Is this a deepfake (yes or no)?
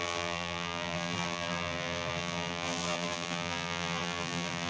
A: yes